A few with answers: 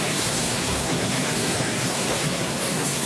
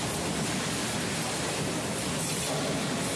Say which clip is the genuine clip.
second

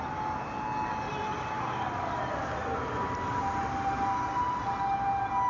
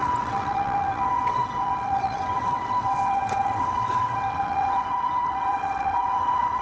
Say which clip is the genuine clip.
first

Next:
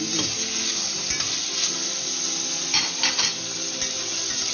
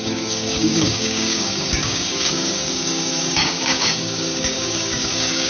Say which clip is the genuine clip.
first